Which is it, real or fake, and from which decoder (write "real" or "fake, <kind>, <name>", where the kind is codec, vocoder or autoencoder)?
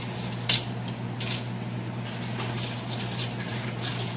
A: real